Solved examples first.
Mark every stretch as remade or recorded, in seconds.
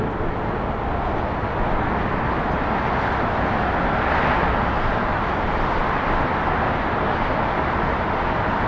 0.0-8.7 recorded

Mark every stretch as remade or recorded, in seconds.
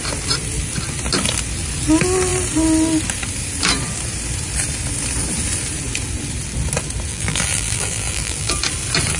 0.0-7.1 recorded; 7.1-8.5 remade; 8.5-9.2 recorded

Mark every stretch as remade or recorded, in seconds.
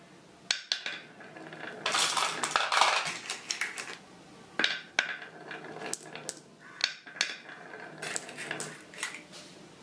0.0-9.8 recorded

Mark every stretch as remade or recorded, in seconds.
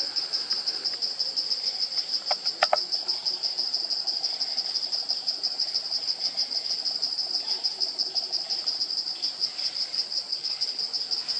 0.0-10.3 recorded; 10.3-10.8 remade; 10.8-11.4 recorded